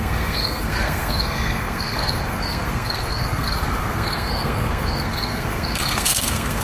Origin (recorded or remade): remade